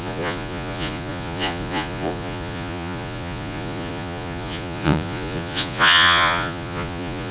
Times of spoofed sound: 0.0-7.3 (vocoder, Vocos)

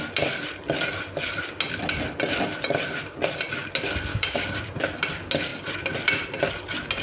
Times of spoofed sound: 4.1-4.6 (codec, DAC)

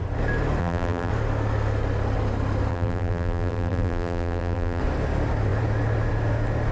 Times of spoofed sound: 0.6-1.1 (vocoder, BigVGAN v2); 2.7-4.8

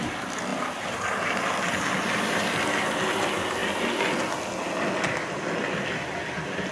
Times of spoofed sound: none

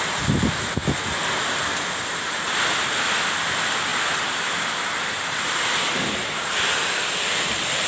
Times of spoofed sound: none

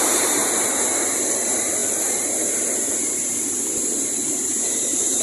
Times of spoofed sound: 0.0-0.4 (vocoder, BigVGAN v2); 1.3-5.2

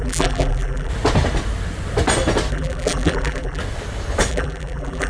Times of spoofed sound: 0.0-0.9 (vocoder, BigVGAN v2); 2.5-3.6; 4.3-5.1